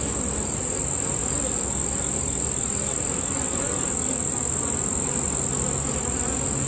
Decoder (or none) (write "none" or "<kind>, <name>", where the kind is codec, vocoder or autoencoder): none